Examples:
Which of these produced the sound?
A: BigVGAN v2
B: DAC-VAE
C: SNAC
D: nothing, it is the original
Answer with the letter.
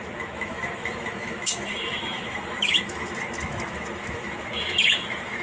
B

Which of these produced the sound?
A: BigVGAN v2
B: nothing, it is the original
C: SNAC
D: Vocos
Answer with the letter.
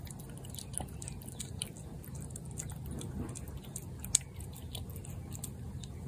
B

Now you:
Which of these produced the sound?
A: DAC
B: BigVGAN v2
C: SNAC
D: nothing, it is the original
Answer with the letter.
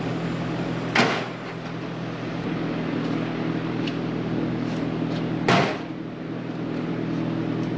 D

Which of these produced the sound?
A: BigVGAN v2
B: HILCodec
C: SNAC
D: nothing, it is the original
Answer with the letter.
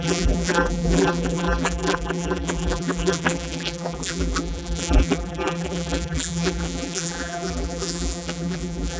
A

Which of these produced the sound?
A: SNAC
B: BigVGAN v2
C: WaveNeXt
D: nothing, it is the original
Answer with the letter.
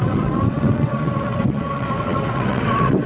C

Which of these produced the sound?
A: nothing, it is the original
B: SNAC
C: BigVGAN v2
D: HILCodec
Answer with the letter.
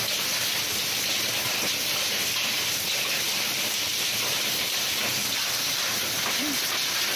A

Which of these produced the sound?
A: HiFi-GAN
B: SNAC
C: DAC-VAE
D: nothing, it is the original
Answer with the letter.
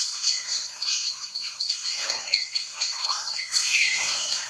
B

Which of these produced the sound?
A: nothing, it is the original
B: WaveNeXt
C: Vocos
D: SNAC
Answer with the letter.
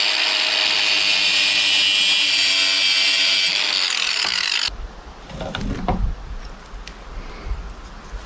A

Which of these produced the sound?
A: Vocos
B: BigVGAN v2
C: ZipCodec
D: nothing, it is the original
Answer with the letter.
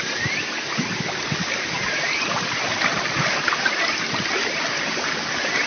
D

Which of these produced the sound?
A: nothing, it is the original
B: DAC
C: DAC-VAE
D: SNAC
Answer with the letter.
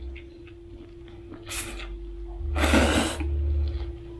A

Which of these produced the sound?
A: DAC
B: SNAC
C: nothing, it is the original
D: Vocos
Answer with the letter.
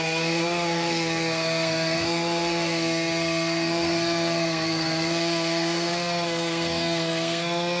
B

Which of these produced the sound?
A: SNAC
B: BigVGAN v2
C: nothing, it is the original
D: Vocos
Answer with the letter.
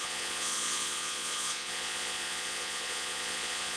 D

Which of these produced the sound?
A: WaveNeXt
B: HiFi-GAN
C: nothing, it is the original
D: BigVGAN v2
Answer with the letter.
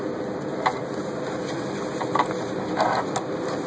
C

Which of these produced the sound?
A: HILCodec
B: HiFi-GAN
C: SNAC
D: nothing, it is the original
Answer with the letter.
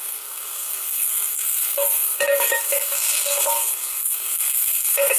C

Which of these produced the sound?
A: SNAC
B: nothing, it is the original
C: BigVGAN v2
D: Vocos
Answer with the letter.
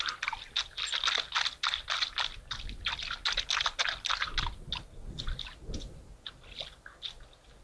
B